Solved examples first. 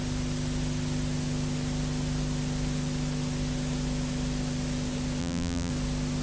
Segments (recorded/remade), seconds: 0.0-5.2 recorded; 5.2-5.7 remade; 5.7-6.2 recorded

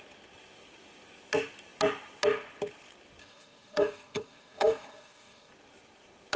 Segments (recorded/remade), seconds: 0.0-3.2 recorded; 3.2-5.5 remade; 5.5-6.4 recorded

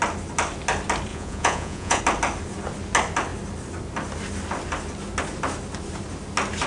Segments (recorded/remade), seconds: 0.0-1.1 recorded; 1.1-2.0 remade; 2.0-6.7 recorded

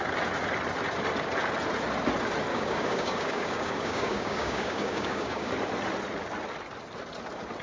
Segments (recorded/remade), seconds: 0.0-2.5 recorded; 2.5-5.5 remade; 5.5-7.6 recorded

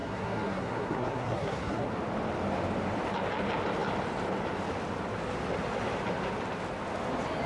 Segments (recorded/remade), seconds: 0.0-1.9 remade; 1.9-7.5 recorded